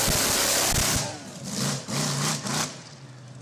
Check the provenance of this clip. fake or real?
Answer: real